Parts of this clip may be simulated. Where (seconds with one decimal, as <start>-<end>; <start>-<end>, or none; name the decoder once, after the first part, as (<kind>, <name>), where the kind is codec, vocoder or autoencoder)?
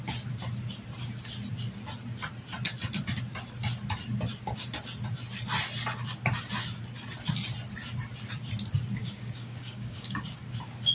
9.0-10.4 (codec, DAC)